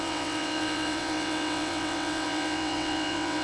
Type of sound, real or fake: fake